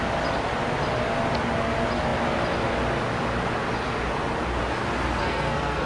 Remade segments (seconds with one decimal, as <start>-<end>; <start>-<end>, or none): 5.2-5.9